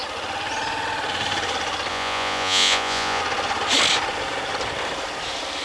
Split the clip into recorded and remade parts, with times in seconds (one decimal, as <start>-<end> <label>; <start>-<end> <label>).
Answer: 0.0-1.9 recorded; 1.9-3.2 remade; 3.2-5.6 recorded